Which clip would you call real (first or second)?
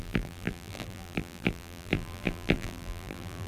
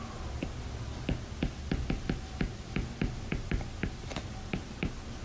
second